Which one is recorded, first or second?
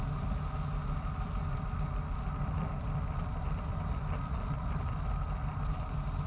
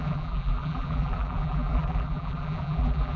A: first